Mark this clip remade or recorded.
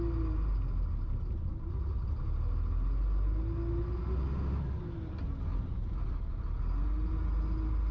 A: recorded